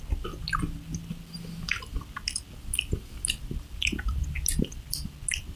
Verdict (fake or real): real